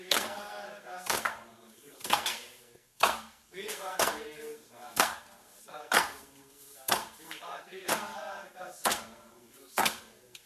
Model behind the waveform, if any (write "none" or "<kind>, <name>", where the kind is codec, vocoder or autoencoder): codec, SNAC